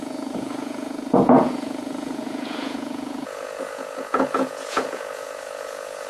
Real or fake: fake